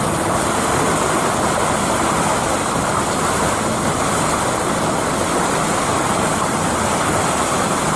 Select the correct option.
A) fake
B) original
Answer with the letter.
B